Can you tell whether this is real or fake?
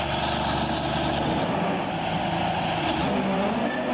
real